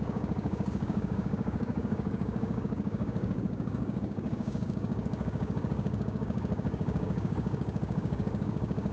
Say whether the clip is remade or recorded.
remade